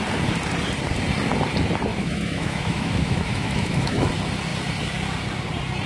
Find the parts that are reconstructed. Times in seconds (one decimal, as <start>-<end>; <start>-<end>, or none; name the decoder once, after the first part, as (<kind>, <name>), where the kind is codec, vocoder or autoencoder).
1.9-4.1 (autoencoder, DAC-VAE)